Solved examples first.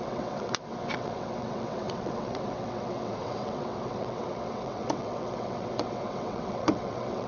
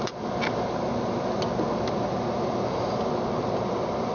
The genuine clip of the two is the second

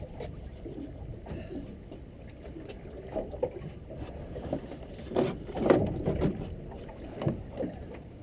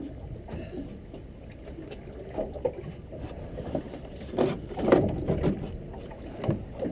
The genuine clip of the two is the second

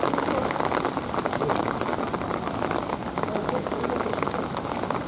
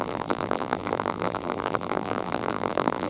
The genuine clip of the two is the first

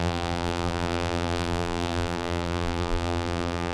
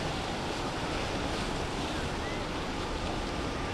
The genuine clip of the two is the second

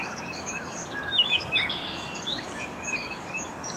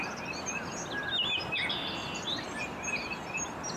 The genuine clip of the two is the second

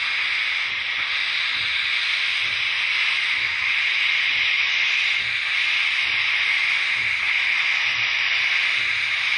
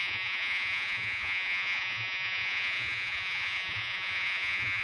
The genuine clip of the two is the first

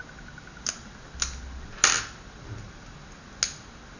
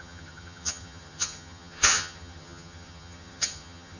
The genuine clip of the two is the first